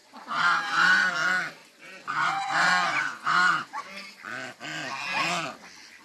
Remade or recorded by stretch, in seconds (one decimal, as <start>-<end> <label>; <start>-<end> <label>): 0.0-1.1 remade; 1.1-1.6 recorded; 1.6-3.8 remade; 3.8-6.0 recorded